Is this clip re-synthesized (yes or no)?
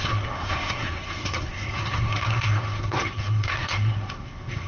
yes